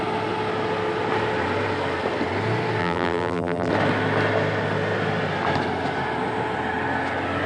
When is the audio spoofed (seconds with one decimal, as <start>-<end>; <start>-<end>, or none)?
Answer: 2.8-3.7